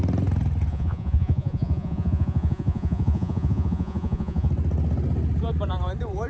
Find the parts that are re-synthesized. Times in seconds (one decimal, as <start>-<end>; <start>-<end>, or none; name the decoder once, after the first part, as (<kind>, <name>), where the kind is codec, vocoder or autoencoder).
0.7-4.5 (vocoder, Vocos)